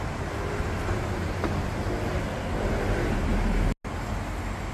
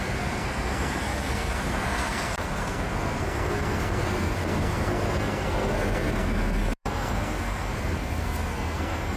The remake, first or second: second